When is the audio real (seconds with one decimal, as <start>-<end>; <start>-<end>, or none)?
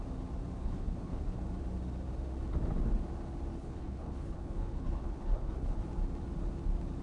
0.0-0.6; 1.4-3.5; 5.9-7.0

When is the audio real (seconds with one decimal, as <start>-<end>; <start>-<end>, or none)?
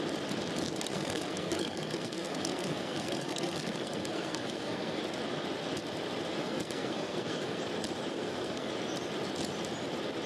0.0-0.9; 5.0-6.4; 7.6-8.1; 8.7-10.3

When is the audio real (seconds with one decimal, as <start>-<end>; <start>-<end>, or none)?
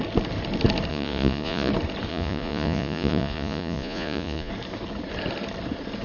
0.0-0.9; 1.7-2.1; 4.5-6.0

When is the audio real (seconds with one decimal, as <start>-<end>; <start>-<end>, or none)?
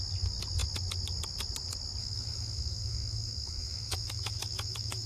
0.0-2.0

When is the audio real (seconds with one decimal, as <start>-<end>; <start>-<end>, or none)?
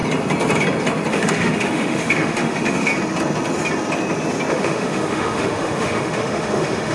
0.0-1.1; 2.9-4.5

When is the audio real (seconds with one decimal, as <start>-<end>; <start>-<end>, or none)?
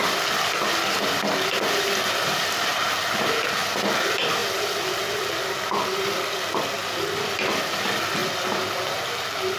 2.7-3.3; 4.4-6.0; 6.8-7.4; 8.2-9.2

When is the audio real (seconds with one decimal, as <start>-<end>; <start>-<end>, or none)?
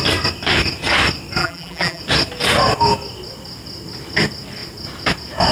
0.0-1.4; 2.0-5.5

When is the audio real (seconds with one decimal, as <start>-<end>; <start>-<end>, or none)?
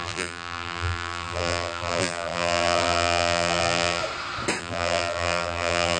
4.0-4.6